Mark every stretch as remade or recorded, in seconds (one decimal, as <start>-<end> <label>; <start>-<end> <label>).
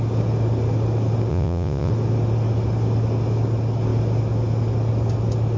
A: 0.0-1.3 recorded; 1.3-1.9 remade; 1.9-5.6 recorded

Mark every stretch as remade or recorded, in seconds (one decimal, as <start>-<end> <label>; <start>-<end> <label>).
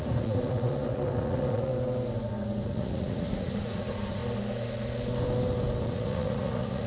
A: 0.0-1.7 remade; 1.7-2.7 recorded; 2.7-4.2 remade; 4.2-5.9 recorded; 5.9-6.9 remade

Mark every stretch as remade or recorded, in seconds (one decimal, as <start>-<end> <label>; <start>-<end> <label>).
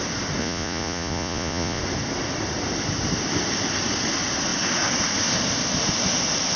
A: 0.0-0.4 recorded; 0.4-1.8 remade; 1.8-6.6 recorded